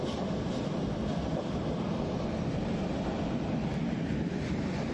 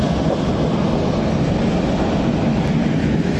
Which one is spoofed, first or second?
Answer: first